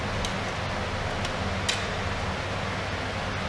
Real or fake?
real